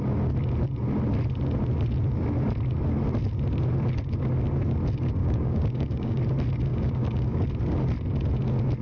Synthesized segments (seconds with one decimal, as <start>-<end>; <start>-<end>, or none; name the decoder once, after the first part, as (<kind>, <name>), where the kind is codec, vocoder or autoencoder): 5.2-6.2 (codec, DAC); 6.7-7.5